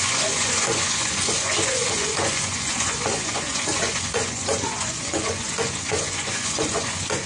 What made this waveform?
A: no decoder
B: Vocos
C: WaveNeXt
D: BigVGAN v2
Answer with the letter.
B